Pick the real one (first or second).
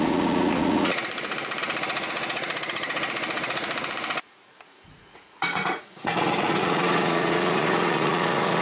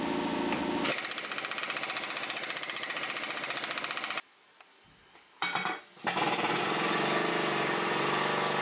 second